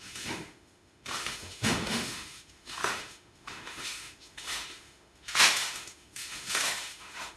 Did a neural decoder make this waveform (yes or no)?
yes